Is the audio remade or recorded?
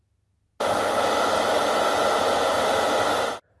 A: recorded